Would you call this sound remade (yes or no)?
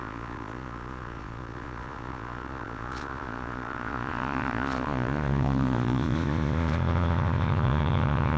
yes